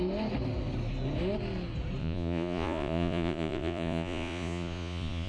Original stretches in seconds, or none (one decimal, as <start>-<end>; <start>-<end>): 0.0-2.0